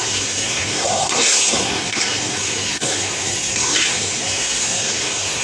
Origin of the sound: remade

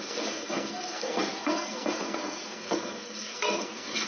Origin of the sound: remade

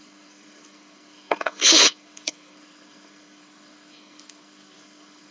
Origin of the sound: remade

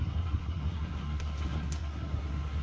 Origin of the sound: remade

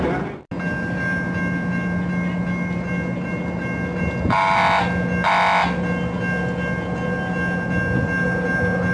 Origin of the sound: recorded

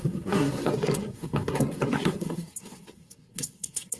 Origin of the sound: remade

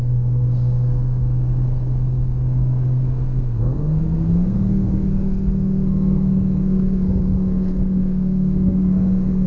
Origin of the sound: remade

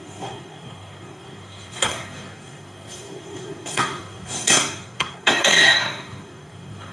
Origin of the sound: remade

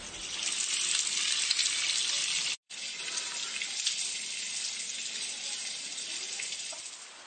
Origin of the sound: recorded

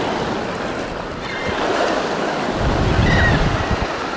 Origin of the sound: recorded